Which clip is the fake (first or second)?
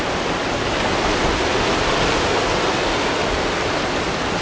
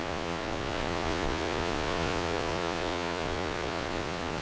second